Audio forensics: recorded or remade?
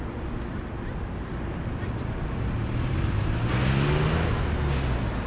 recorded